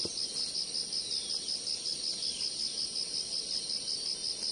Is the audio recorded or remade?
recorded